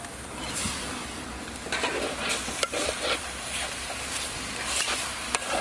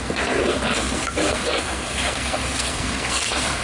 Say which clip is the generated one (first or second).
second